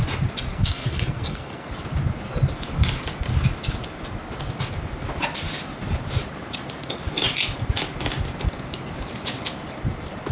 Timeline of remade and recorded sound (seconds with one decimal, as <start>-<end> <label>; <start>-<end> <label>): 0.0-0.5 recorded; 0.5-1.7 remade; 1.7-10.3 recorded